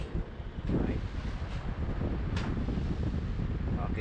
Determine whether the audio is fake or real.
real